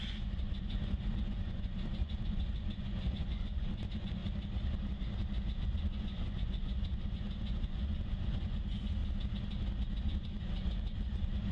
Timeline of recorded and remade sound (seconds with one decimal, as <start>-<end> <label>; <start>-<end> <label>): 0.0-4.2 remade; 4.2-5.6 recorded; 5.6-9.0 remade; 9.0-10.0 recorded; 10.0-11.5 remade